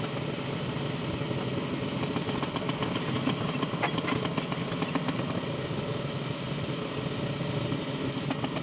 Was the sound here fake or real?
real